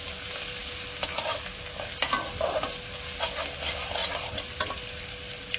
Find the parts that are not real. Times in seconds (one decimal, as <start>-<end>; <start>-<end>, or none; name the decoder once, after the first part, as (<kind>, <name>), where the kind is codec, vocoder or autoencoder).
4.0-5.0 (vocoder, BigVGAN v2)